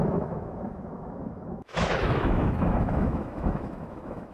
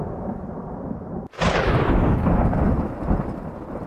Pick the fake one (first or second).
first